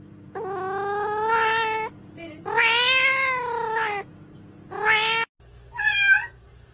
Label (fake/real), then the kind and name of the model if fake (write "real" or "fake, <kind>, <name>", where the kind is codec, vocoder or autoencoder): real